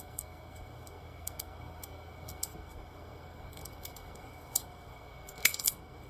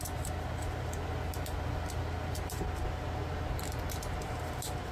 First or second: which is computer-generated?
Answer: first